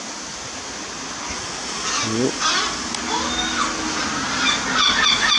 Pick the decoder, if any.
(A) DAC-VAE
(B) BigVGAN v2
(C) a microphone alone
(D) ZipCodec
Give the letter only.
C